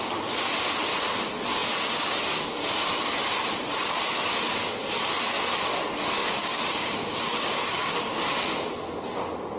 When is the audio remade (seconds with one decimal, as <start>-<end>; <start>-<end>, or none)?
6.2-8.2